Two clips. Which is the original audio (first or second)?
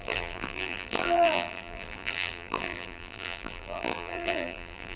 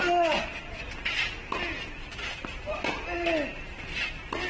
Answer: second